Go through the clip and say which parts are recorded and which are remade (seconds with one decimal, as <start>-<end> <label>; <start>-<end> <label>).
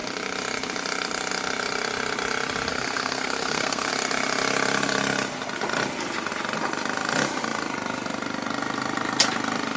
0.0-2.7 recorded; 2.7-3.9 remade; 3.9-9.8 recorded